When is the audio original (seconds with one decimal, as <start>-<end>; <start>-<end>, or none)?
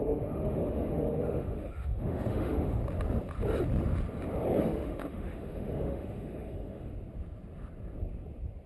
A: 2.8-4.6; 6.9-8.7